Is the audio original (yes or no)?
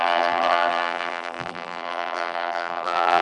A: no